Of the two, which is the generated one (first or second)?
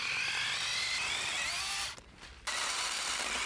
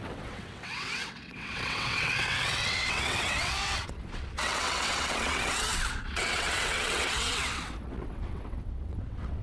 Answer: second